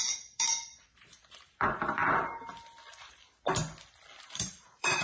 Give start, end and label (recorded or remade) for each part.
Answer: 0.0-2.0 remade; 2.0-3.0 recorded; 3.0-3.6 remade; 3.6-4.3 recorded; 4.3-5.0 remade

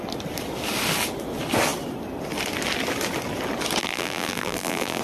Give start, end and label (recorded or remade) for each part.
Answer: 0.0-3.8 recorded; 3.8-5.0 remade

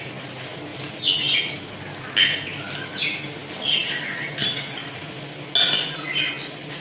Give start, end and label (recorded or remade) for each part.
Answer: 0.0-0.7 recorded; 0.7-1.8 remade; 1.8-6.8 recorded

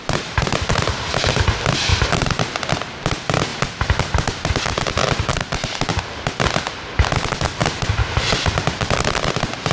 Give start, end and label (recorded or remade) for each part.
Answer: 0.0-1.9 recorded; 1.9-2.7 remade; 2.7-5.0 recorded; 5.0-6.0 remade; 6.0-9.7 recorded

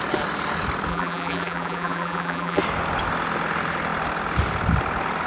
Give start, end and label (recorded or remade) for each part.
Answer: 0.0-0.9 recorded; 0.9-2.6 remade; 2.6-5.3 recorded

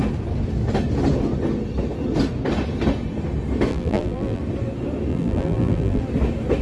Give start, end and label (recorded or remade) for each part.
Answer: 0.0-3.7 recorded; 3.7-4.4 remade; 4.4-5.1 recorded; 5.1-6.0 remade; 6.0-6.6 recorded